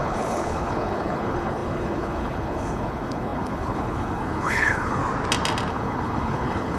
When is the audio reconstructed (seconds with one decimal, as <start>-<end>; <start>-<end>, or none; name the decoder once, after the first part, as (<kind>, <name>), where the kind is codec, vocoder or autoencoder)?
0.0-5.0 (codec, HILCodec); 5.7-6.8